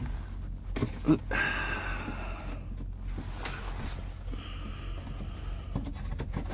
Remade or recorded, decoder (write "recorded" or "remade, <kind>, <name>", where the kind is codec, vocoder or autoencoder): recorded